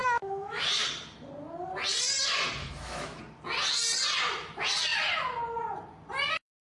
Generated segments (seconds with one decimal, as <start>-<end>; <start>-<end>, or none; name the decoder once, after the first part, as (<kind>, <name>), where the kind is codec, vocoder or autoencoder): 0.0-0.6 (autoencoder, DAC-VAE); 2.6-3.2